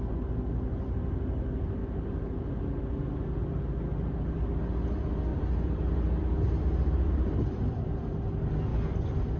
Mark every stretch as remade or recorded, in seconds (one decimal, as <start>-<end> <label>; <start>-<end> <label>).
0.0-5.3 recorded; 5.3-8.0 remade; 8.0-8.7 recorded; 8.7-9.4 remade